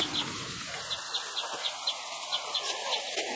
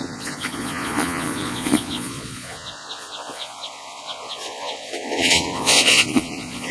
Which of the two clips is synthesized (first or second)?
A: second